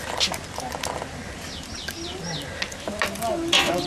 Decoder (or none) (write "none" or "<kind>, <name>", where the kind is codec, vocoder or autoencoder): none